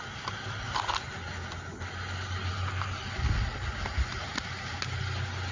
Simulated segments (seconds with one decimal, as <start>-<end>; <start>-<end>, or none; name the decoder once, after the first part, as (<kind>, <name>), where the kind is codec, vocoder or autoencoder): none